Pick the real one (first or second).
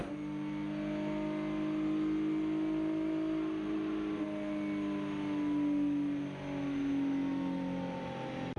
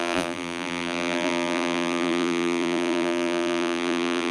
first